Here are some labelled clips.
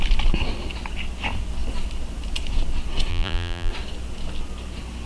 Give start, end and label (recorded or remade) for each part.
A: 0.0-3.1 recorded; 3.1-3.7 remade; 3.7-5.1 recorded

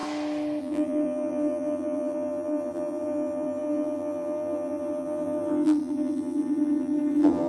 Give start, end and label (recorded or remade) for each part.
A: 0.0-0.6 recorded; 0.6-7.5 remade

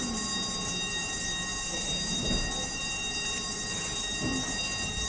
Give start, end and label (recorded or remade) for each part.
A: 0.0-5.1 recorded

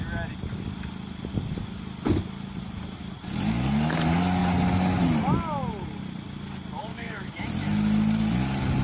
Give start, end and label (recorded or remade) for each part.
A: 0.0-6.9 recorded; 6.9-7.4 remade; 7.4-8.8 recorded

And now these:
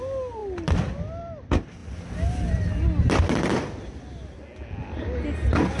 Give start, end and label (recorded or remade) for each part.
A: 0.0-5.8 recorded

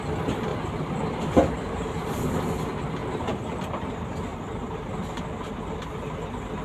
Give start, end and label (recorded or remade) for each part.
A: 0.0-0.5 recorded; 0.5-2.2 remade; 2.2-3.0 recorded; 3.0-3.9 remade; 3.9-4.3 recorded; 4.3-5.6 remade; 5.6-6.6 recorded

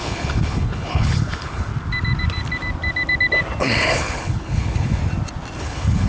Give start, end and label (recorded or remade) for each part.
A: 0.0-1.7 remade; 1.7-3.6 recorded; 3.6-5.0 remade; 5.0-5.6 recorded; 5.6-6.1 remade

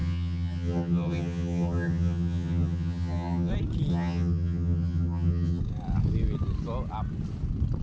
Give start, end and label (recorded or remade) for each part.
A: 0.0-3.5 remade; 3.5-3.9 recorded; 3.9-5.6 remade; 5.6-7.8 recorded